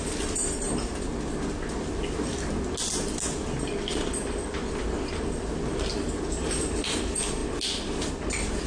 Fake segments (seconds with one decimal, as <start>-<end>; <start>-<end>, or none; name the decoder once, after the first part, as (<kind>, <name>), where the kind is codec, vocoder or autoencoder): 5.7-6.8 (vocoder, BigVGAN v2)